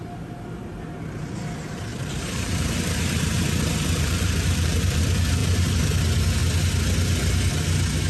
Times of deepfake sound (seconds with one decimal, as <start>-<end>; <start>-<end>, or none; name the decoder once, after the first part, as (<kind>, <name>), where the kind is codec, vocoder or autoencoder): 1.9-5.0 (vocoder, BigVGAN v2); 5.4-6.0